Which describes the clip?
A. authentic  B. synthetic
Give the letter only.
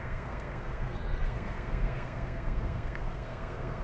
B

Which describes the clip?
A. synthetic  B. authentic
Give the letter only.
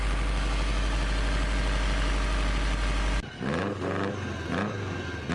B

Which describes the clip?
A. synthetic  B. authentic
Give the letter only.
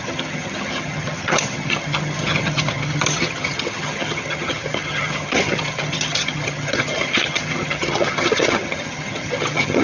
A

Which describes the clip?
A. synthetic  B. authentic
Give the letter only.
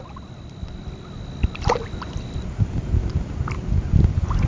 B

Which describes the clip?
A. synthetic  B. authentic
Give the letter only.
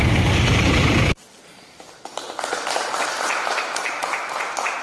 A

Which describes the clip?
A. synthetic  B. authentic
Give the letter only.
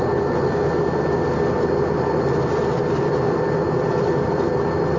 B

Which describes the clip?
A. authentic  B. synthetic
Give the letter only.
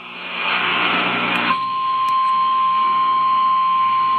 B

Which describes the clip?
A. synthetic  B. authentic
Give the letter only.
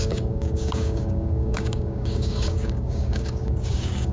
A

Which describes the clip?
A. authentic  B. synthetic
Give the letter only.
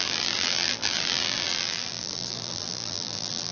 B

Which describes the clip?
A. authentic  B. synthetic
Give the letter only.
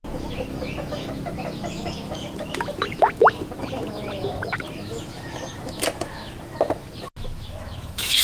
B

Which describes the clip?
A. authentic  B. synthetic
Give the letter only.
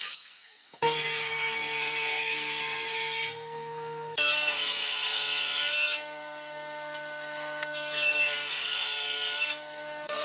B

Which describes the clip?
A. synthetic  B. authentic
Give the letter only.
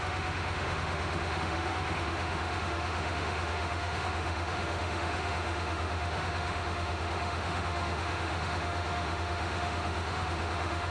A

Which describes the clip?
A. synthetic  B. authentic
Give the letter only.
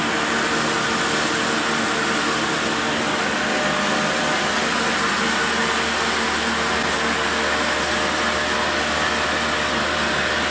B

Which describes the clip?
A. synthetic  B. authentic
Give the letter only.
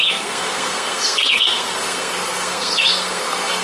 A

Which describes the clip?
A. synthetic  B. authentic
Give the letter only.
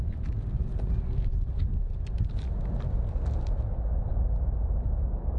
B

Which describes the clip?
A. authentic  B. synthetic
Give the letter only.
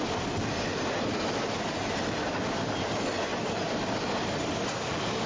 A